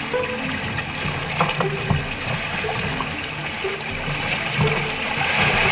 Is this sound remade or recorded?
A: recorded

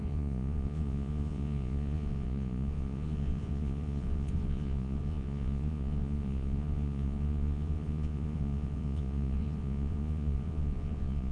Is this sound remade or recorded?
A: remade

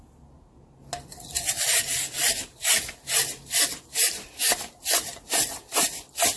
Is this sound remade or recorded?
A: recorded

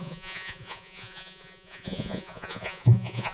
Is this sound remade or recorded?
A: remade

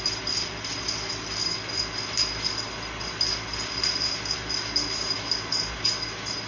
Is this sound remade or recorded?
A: recorded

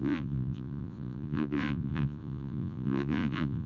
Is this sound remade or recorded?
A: remade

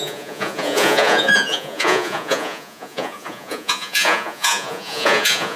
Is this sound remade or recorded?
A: remade